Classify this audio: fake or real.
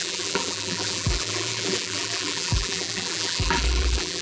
fake